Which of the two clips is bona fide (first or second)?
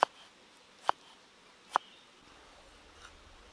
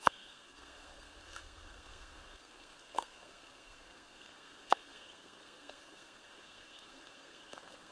first